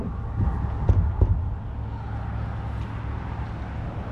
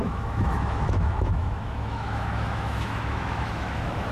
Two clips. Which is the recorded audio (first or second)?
first